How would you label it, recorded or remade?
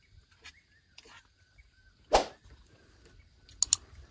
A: recorded